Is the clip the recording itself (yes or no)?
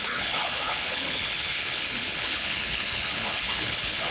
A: no